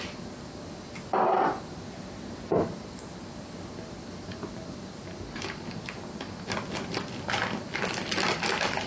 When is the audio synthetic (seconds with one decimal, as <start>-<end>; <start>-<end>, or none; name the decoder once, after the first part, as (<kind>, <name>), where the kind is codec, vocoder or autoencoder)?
none